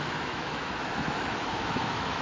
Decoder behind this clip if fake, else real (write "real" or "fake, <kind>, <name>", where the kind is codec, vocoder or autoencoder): fake, autoencoder, DAC-VAE